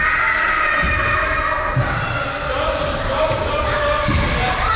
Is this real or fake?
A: real